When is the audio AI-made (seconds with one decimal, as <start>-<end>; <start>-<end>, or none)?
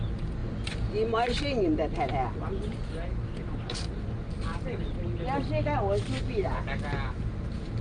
none